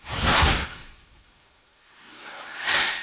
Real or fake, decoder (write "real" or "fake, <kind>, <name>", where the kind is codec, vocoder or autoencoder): fake, codec, SNAC